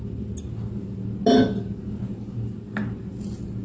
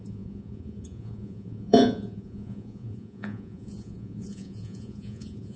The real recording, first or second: first